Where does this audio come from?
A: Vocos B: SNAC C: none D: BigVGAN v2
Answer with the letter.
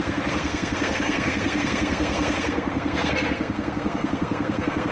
B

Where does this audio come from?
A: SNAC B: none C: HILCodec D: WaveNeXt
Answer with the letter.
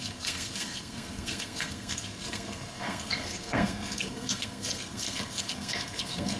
A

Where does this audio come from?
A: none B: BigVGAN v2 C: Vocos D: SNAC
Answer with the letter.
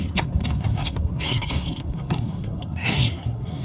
D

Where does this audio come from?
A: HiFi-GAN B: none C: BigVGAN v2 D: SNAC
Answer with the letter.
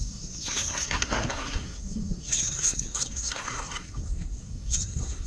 D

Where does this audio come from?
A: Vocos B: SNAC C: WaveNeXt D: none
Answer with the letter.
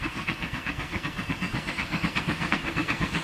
B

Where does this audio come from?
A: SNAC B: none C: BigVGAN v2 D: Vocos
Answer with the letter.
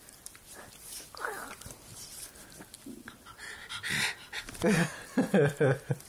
B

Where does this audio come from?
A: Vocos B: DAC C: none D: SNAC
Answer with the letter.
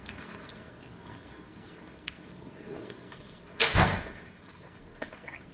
D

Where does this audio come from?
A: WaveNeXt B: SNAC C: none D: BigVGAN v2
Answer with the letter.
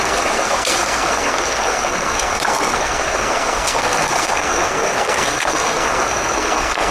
B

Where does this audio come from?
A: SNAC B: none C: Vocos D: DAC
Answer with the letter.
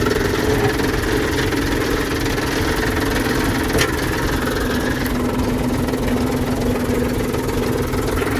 B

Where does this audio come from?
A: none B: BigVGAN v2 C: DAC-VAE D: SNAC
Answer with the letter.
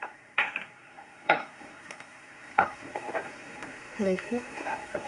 D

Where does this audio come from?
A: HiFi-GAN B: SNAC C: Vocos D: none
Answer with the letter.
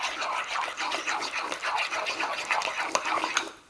D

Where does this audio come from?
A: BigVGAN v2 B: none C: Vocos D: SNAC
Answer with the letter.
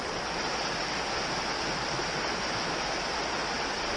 B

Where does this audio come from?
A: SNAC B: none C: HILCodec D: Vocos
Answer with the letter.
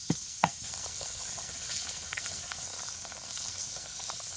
A